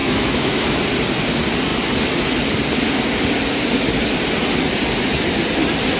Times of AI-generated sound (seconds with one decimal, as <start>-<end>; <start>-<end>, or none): 0.0-0.8